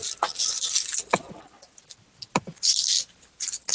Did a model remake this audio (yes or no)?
no